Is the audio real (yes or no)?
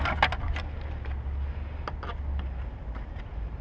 yes